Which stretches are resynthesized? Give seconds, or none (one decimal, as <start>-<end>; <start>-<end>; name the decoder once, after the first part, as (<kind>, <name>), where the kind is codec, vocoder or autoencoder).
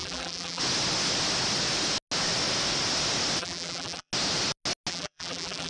0.0-0.6 (vocoder, BigVGAN v2); 3.4-4.1; 4.9-5.7